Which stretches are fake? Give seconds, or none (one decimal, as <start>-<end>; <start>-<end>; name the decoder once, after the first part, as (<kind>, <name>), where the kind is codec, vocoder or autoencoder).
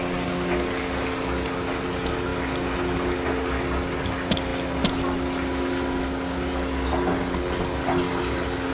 none